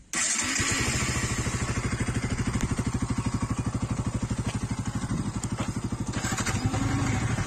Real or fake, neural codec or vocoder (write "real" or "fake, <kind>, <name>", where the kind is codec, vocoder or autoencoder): real